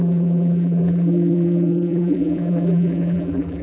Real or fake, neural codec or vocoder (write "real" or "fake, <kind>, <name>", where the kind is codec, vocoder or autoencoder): fake, vocoder, BigVGAN v2